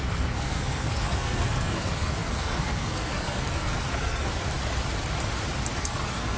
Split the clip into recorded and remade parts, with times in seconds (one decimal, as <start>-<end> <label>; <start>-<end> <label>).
0.0-4.3 remade; 4.3-5.8 recorded; 5.8-6.4 remade